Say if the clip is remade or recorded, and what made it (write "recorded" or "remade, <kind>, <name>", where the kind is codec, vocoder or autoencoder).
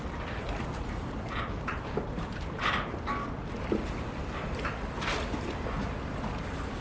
recorded